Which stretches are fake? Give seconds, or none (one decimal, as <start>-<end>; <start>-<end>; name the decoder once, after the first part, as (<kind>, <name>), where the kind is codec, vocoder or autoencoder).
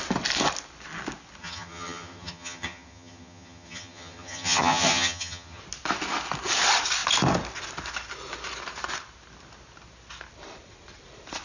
1.4-5.6 (vocoder, HiFi-GAN)